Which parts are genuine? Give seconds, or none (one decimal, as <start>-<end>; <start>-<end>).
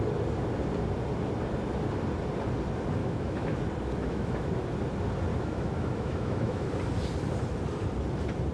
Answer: 0.0-3.0; 3.6-4.0; 4.5-5.3; 6.7-8.5